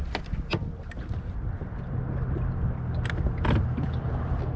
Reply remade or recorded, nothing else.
recorded